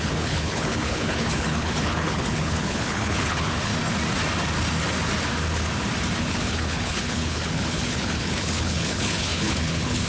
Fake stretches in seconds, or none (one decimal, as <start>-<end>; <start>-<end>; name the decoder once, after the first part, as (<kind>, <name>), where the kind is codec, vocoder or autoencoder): 0.0-3.7 (codec, HILCodec); 6.2-10.1